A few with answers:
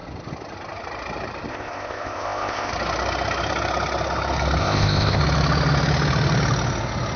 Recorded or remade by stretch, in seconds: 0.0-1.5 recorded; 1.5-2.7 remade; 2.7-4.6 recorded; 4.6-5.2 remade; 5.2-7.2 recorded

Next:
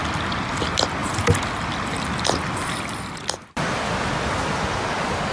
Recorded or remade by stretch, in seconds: 0.0-5.3 recorded